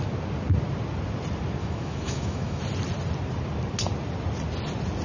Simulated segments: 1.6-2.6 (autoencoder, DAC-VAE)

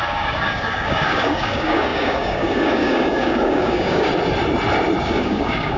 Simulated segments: 0.0-4.1 (codec, DAC); 5.0-5.8